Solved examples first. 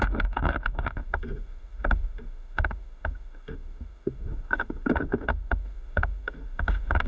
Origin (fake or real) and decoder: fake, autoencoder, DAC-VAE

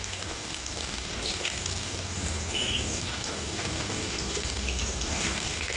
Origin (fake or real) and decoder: fake, codec, DAC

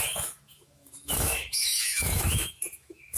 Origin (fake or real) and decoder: fake, autoencoder, DAC-VAE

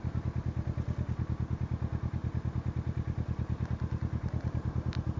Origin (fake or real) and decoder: real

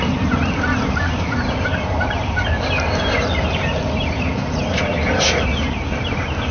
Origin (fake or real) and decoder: real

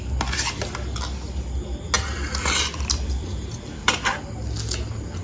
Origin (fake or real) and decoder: real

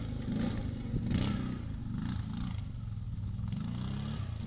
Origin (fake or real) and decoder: real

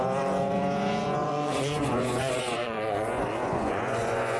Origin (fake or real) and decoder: fake, vocoder, Vocos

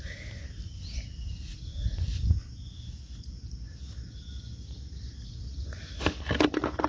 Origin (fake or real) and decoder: real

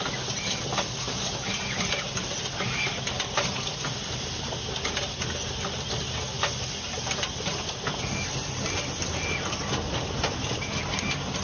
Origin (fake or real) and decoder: real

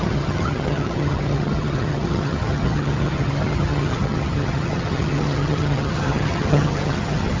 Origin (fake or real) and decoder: fake, vocoder, HiFi-GAN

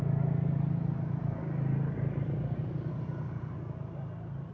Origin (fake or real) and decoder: real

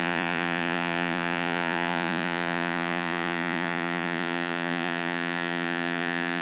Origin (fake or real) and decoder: fake, vocoder, Vocos